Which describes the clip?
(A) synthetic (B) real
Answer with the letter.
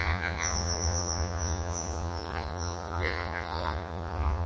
A